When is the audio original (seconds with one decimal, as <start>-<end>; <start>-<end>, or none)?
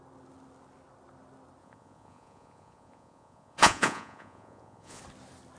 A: 0.0-1.6; 5.0-5.6